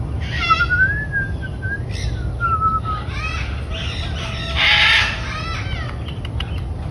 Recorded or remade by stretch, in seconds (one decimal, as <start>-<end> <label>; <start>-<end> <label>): 0.0-6.9 recorded